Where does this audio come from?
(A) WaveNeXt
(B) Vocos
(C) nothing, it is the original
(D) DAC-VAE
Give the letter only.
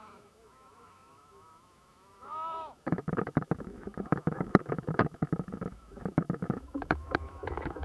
D